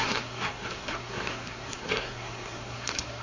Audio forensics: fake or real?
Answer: fake